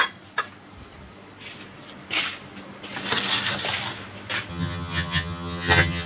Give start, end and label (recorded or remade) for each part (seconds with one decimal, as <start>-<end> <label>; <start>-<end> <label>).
0.0-4.5 recorded; 4.5-6.1 remade